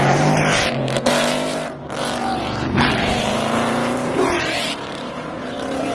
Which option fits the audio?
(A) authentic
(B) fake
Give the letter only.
B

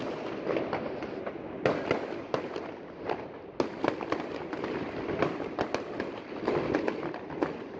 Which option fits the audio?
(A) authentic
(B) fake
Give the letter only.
A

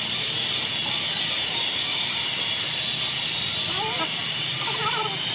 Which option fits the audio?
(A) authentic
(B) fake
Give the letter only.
A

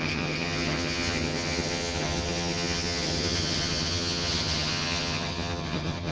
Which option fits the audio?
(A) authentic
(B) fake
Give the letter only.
B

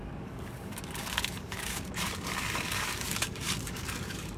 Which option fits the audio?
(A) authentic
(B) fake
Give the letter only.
B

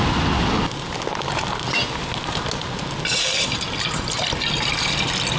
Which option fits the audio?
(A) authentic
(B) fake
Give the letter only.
A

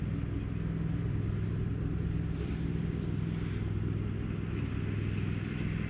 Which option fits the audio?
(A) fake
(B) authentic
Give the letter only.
B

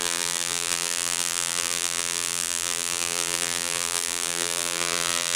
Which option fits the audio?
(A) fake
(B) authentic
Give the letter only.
A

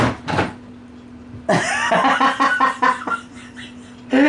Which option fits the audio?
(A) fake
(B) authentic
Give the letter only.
B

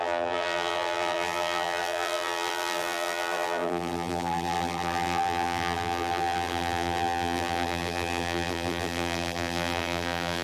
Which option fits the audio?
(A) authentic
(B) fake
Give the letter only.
B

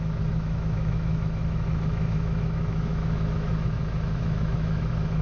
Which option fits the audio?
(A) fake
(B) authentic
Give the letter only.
A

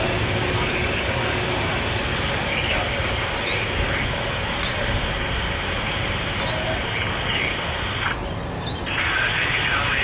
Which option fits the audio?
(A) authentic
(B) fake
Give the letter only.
A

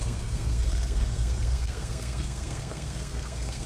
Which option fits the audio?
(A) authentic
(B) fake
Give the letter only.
B